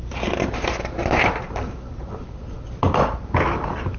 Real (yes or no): no